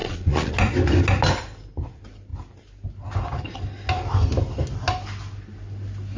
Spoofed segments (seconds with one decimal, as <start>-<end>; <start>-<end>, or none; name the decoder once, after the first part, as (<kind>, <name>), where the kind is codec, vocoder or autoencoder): 0.0-0.5 (vocoder, Vocos)